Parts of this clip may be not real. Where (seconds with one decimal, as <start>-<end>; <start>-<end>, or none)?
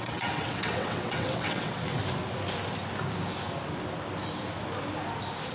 0.0-2.0